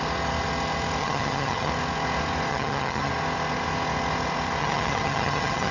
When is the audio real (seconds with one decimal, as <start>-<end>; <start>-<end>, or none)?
0.0-1.0; 1.7-2.5; 3.1-4.6